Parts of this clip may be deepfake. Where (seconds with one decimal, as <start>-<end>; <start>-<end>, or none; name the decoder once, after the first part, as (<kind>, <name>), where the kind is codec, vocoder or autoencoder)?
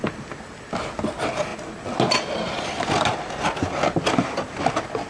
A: none